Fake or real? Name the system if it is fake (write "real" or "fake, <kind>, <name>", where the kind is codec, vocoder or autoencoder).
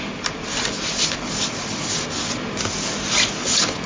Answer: real